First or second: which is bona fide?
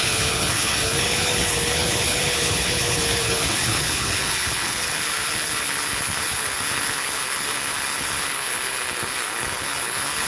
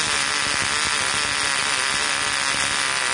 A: second